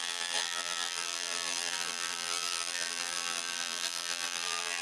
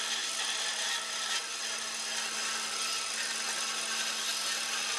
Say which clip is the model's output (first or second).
first